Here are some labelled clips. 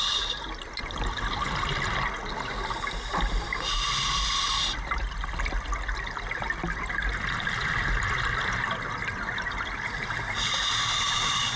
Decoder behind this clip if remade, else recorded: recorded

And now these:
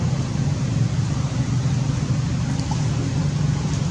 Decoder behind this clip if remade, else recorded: recorded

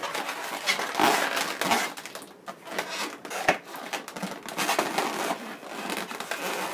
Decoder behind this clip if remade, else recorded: recorded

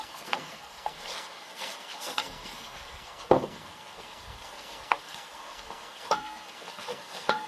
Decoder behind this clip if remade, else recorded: remade, codec, SNAC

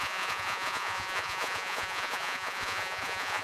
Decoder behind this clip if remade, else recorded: remade, vocoder, Vocos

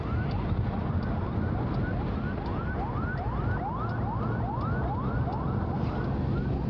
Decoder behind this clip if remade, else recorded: recorded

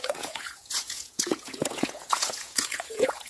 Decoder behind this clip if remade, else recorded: remade, vocoder, Vocos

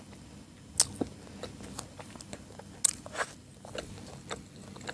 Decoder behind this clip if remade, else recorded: recorded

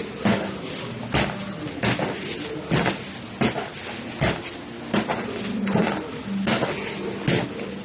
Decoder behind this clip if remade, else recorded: recorded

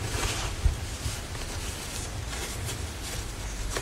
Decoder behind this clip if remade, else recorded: recorded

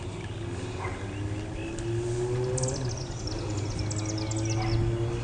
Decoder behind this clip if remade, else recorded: recorded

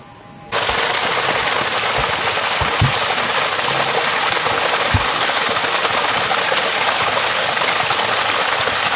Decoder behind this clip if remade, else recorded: recorded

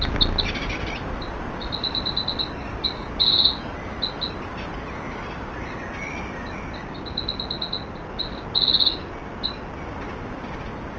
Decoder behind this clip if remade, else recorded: recorded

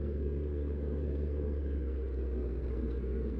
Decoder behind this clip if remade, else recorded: remade, codec, SNAC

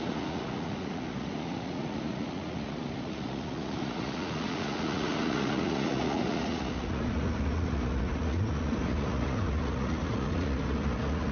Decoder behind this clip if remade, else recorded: remade, vocoder, Vocos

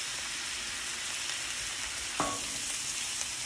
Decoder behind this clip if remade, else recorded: recorded